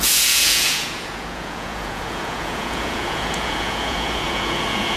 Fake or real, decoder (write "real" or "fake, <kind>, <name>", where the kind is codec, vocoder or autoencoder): fake, vocoder, Vocos